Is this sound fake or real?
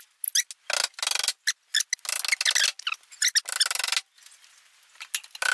real